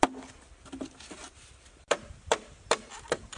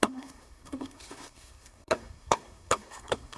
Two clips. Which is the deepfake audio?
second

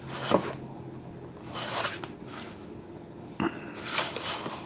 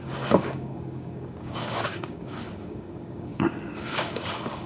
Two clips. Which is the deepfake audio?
second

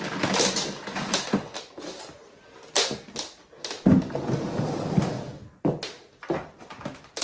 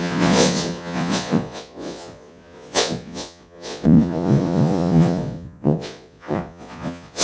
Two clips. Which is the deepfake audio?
second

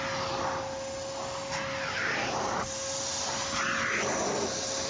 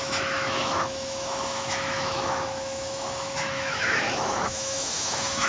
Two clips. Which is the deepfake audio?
second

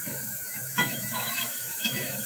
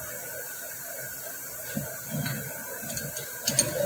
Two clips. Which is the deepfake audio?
first